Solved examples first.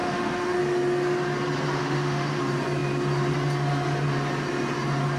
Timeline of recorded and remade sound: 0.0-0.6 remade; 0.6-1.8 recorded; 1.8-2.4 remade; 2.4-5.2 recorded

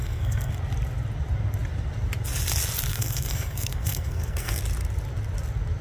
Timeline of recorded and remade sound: 0.0-0.5 remade; 0.5-2.9 recorded; 2.9-4.6 remade; 4.6-5.8 recorded

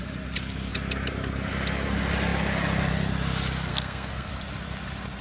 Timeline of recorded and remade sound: 0.0-3.7 recorded; 3.7-4.3 remade; 4.3-5.2 recorded

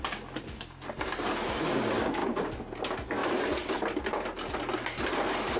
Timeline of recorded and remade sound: 0.0-2.2 recorded; 2.2-2.8 remade; 2.8-3.2 recorded; 3.2-4.0 remade; 4.0-5.6 recorded

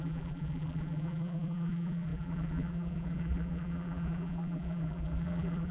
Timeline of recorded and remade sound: 0.0-5.7 remade

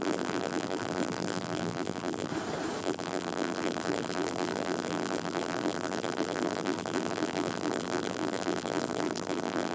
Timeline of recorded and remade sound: 0.0-2.3 remade; 2.3-2.8 recorded; 2.8-9.7 remade